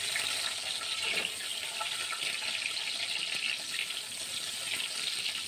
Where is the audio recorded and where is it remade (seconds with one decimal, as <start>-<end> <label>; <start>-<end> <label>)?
0.0-5.5 recorded